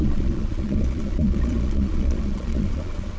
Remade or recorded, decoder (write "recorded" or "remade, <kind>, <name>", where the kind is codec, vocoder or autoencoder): remade, vocoder, Vocos